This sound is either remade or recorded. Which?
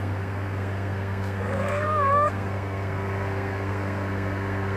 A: remade